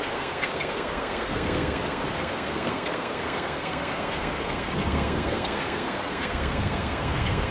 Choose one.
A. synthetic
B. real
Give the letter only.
A